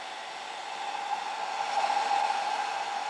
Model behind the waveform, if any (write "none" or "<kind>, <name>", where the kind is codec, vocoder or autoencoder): none